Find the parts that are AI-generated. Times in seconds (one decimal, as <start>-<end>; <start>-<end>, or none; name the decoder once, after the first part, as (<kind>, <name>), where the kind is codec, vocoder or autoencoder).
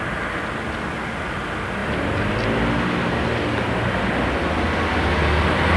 none